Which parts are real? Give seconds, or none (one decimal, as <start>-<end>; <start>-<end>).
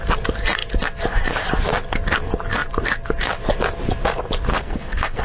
0.0-4.5